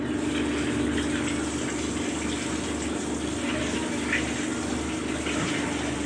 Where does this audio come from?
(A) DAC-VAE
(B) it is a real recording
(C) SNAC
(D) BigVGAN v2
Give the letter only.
B